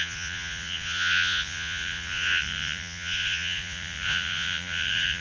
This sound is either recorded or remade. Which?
remade